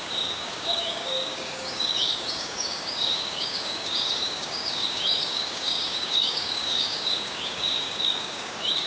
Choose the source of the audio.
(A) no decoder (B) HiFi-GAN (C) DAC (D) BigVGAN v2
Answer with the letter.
C